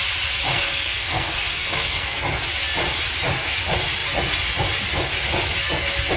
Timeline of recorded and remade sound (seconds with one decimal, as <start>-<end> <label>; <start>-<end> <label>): 0.0-0.5 recorded; 0.5-2.2 remade; 2.2-6.2 recorded